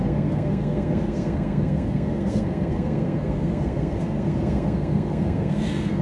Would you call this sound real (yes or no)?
no